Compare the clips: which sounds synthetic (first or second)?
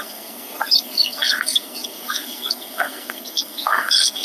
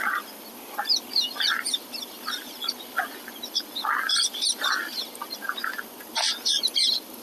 first